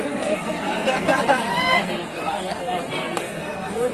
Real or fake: fake